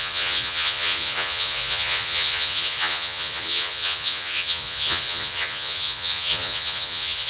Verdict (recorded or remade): remade